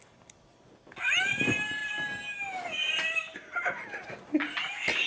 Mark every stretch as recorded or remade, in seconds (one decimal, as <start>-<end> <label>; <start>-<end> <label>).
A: 0.0-5.1 recorded